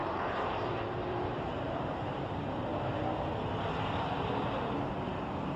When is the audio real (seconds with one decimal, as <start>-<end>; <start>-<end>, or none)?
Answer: 2.7-4.9